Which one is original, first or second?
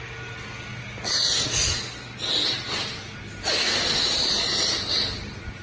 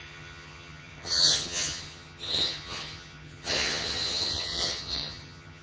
first